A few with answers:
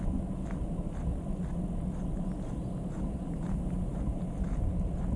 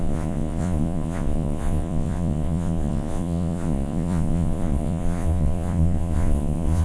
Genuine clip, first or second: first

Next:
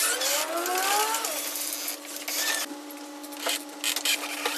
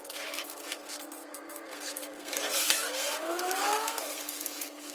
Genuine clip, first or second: first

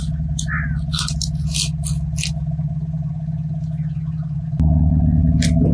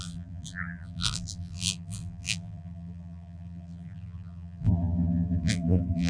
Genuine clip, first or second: first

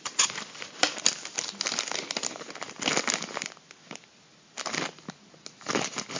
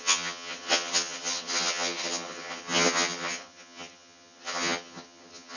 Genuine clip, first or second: first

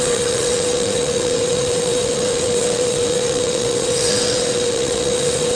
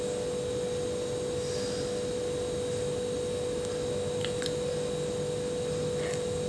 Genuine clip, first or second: second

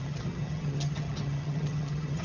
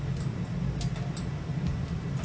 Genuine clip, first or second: second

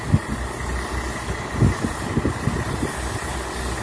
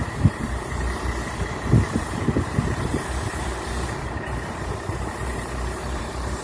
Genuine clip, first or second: first